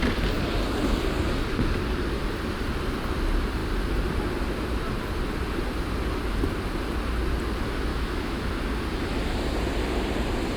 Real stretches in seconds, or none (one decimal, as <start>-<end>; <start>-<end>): 0.0-7.9; 8.5-10.6